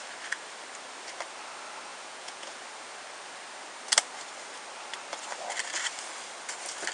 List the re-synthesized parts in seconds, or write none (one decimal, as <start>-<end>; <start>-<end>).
1.9-2.6